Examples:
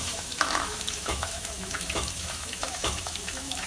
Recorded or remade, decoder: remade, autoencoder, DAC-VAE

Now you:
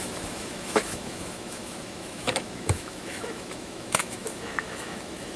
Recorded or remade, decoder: remade, autoencoder, DAC-VAE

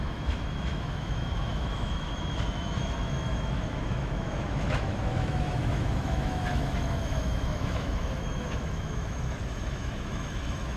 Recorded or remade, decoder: remade, autoencoder, DAC-VAE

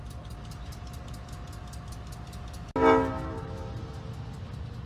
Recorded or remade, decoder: recorded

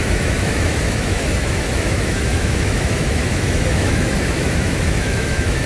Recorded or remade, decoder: remade, autoencoder, DAC-VAE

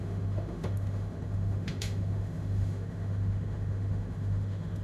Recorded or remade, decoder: remade, autoencoder, DAC-VAE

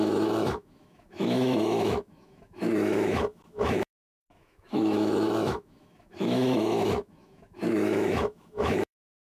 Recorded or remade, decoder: remade, autoencoder, DAC-VAE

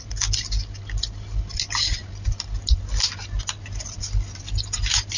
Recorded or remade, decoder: recorded